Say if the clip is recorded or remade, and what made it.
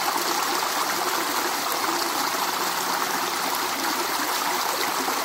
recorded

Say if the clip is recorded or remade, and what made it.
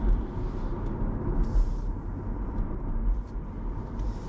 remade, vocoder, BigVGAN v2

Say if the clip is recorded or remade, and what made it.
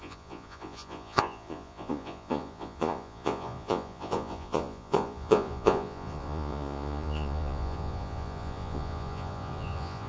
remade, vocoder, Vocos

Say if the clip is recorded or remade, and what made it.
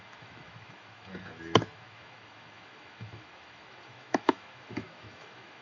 remade, autoencoder, DAC-VAE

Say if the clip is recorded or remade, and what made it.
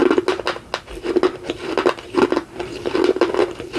recorded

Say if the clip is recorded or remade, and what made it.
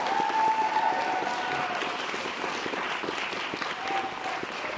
recorded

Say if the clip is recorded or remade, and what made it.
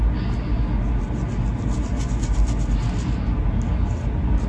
recorded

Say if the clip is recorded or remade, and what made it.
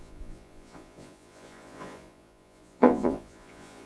remade, vocoder, Vocos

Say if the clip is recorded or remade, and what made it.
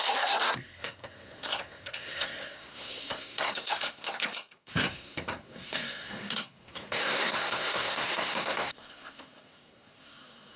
remade, codec, SNAC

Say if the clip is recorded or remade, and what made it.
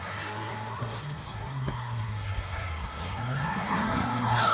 remade, codec, SNAC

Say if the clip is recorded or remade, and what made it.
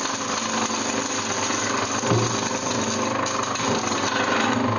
recorded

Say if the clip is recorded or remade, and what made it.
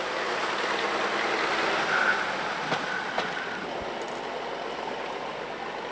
recorded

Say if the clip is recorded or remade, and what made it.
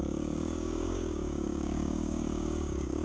remade, codec, DAC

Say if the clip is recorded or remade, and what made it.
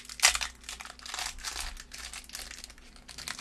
recorded